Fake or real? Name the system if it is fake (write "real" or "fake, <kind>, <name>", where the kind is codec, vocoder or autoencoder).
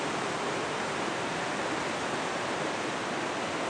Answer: real